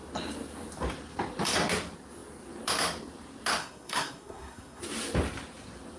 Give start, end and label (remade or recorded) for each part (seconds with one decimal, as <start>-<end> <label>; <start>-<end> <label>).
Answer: 0.0-3.6 recorded; 3.6-4.8 remade; 4.8-6.0 recorded